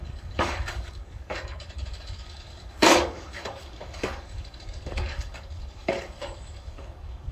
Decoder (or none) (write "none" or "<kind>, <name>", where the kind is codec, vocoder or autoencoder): codec, DAC